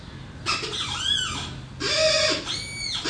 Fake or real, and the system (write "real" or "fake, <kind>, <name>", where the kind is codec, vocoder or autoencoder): real